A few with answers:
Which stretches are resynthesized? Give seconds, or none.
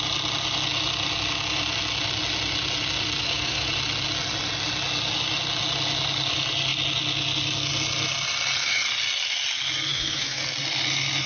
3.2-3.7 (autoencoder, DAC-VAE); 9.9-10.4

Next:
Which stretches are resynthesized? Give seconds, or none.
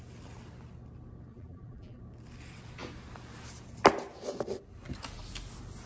1.3-2.0 (vocoder, BigVGAN v2)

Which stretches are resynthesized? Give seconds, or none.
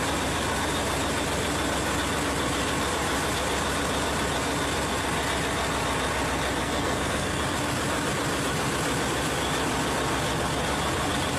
6.6-7.4 (codec, SNAC)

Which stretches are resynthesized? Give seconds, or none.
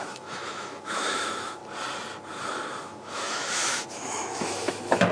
0.0-1.6 (autoencoder, DAC-VAE); 2.8-5.1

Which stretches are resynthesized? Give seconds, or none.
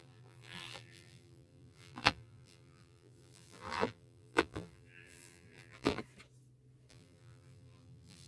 0.0-6.0 (vocoder, BigVGAN v2); 6.9-8.3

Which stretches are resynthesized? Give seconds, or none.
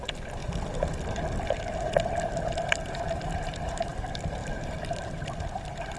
2.8-3.8 (vocoder, BigVGAN v2); 4.4-5.0